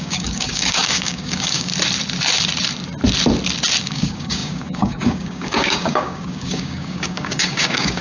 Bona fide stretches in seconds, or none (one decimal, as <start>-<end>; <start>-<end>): 1.7-3.8